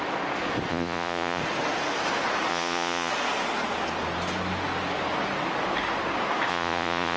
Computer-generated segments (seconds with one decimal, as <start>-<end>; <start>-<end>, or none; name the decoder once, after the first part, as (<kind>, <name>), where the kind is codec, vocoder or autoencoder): 0.7-1.4 (vocoder, Vocos); 2.5-3.1; 6.5-7.2